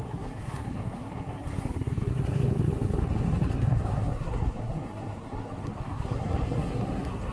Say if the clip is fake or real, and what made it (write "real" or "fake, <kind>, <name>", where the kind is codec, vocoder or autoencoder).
fake, codec, SNAC